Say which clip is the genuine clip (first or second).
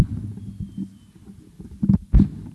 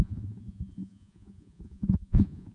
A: first